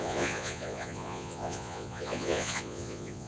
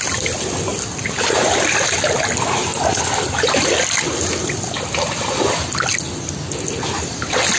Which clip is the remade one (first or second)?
first